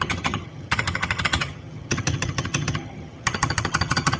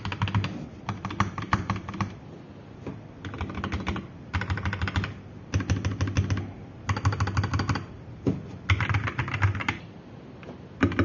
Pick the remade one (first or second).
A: first